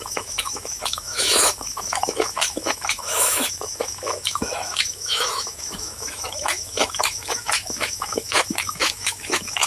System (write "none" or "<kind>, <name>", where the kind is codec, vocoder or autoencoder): autoencoder, DAC-VAE